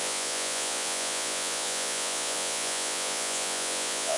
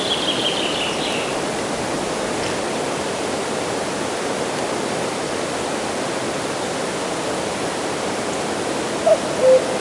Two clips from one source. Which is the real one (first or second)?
second